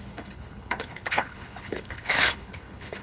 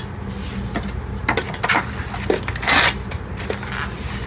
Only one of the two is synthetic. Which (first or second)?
first